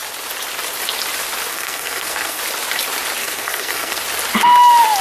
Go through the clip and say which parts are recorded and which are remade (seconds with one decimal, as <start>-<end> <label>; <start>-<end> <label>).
0.0-1.5 recorded; 1.5-2.4 remade; 2.4-3.2 recorded; 3.2-4.0 remade; 4.0-5.0 recorded